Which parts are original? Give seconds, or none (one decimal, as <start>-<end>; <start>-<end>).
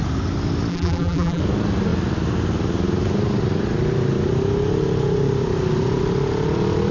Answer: 0.0-0.7; 1.4-6.9